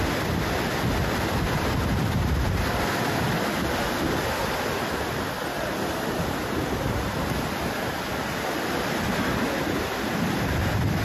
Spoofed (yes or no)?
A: no